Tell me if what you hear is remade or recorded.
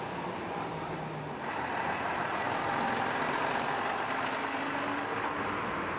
recorded